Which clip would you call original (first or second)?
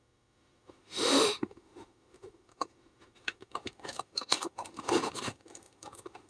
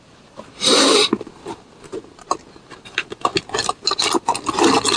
second